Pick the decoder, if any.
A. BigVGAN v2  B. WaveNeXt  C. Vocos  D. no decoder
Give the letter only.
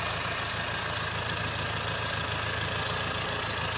D